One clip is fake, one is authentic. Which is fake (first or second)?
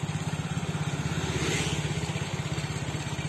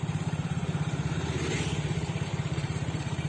second